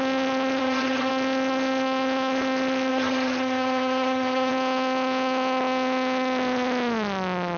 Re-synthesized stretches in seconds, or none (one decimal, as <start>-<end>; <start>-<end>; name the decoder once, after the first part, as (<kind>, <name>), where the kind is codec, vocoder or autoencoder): 0.6-1.1 (vocoder, HiFi-GAN); 2.9-4.5